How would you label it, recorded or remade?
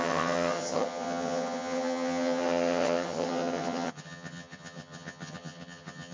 remade